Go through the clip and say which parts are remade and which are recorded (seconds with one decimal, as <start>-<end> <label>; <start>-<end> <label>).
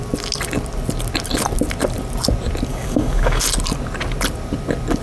0.0-2.7 recorded; 2.7-3.4 remade; 3.4-5.0 recorded